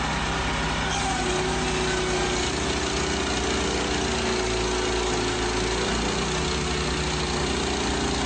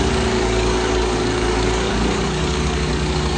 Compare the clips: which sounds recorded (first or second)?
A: first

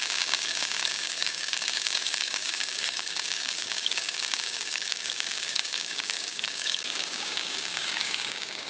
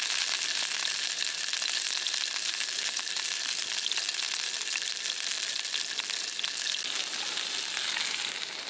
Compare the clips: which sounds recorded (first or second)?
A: second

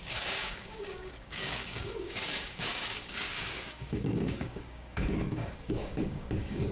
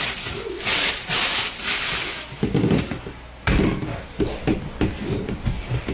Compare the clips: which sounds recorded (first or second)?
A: second